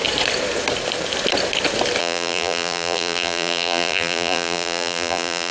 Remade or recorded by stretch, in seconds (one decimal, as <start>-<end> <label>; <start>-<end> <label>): 0.0-2.0 recorded; 2.0-5.5 remade